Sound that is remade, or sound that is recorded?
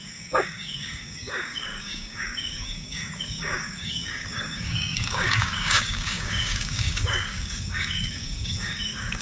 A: remade